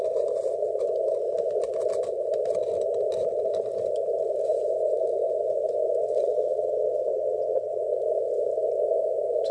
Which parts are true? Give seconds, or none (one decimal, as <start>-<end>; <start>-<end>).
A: 0.0-6.0; 7.8-9.5